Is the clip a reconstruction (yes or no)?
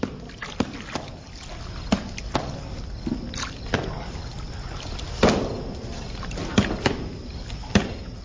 no